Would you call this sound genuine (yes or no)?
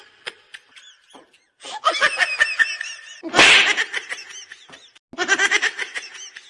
yes